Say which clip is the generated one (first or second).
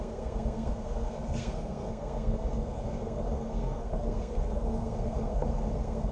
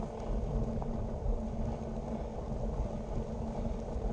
first